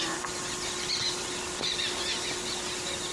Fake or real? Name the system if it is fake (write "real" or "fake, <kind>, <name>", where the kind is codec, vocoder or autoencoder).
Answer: real